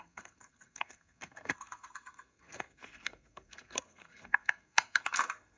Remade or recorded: remade